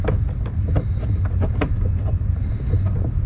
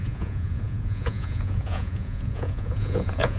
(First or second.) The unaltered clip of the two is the first